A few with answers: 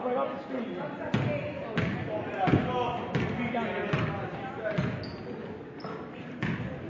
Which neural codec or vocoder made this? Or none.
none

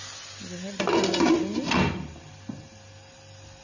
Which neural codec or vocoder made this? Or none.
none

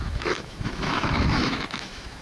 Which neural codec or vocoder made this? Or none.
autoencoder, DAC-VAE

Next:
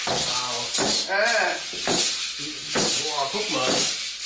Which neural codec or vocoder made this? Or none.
none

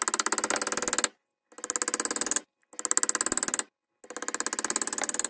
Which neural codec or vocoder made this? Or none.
none